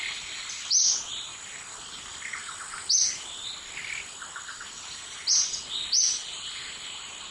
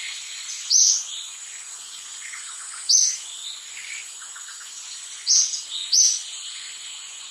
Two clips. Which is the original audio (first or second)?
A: first